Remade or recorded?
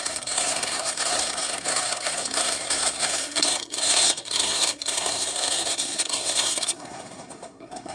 remade